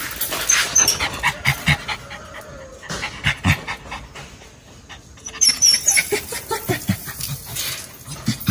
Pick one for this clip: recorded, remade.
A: recorded